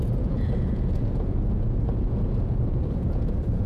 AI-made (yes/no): yes